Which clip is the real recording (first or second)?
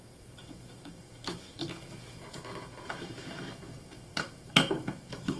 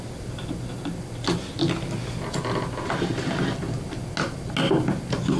second